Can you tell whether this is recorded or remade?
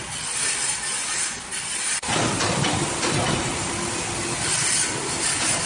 recorded